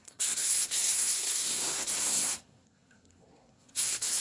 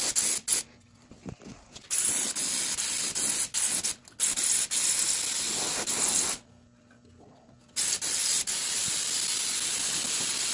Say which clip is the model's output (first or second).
first